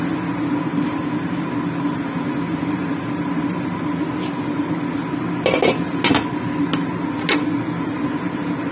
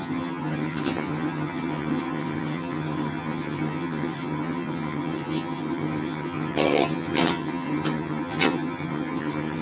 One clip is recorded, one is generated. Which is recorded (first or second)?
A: first